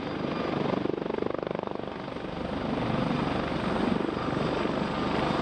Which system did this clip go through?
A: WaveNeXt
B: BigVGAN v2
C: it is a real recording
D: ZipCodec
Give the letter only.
C